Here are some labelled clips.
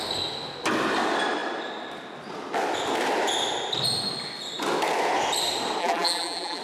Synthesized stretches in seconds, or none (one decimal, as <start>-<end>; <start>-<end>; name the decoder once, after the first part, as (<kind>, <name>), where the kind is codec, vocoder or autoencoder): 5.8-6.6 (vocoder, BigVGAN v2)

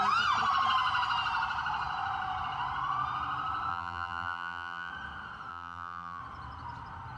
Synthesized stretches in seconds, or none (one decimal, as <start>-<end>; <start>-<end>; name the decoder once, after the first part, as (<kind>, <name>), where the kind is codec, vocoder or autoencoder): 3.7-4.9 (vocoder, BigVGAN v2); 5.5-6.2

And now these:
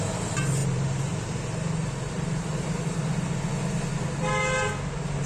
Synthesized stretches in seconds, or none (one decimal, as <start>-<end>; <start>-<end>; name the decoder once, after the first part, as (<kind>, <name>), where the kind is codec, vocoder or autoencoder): 0.6-3.0 (vocoder, BigVGAN v2)

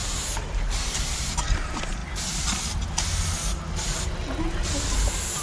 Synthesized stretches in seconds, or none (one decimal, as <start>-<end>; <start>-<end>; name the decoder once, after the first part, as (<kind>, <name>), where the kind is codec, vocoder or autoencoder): 0.0-1.4 (vocoder, BigVGAN v2)

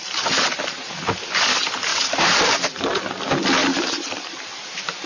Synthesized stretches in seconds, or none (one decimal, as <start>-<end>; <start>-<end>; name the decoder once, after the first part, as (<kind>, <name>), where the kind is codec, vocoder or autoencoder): 1.9-3.0 (vocoder, BigVGAN v2); 3.6-5.1

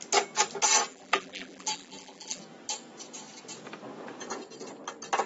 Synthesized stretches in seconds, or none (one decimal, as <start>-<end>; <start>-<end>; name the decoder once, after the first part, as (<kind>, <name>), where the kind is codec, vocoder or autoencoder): 0.9-2.4 (vocoder, BigVGAN v2)

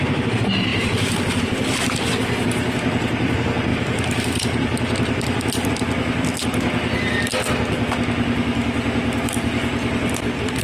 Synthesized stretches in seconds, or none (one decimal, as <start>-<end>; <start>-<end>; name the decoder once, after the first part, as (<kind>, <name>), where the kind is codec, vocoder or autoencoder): 0.7-1.4 (vocoder, BigVGAN v2); 3.7-5.7

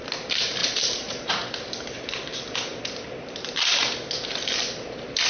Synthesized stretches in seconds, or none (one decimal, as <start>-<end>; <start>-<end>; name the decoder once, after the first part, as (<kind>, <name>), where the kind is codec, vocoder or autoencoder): 0.6-1.3 (vocoder, BigVGAN v2)